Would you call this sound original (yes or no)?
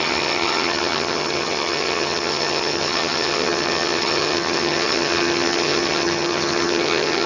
no